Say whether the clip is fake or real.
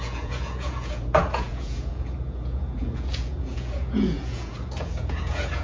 fake